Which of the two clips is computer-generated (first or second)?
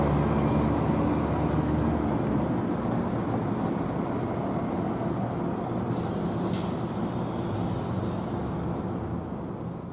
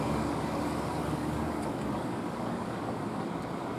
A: second